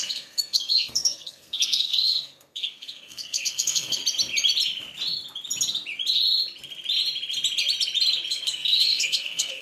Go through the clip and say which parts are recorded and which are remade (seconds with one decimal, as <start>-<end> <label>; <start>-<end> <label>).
0.0-4.0 remade; 4.0-8.3 recorded; 8.3-9.6 remade